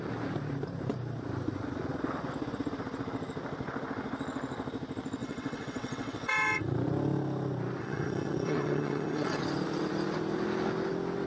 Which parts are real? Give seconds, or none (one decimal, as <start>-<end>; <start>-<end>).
0.0-5.2; 6.6-7.8; 9.4-11.3